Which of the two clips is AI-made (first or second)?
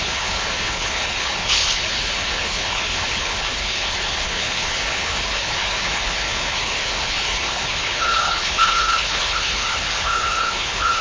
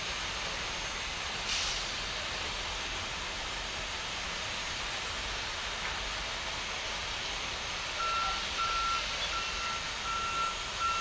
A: first